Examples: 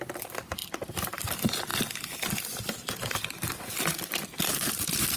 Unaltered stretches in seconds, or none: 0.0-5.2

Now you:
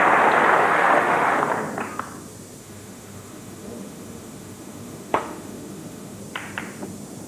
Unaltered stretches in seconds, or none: 0.0-0.6; 1.4-2.6; 6.2-7.3